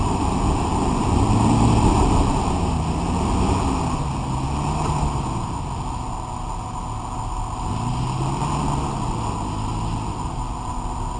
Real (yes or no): yes